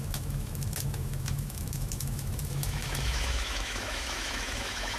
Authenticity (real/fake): fake